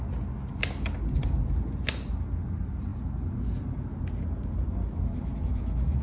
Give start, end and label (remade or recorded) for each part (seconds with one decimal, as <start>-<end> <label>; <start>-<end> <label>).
0.0-6.0 recorded